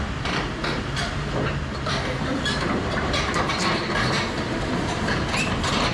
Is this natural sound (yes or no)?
no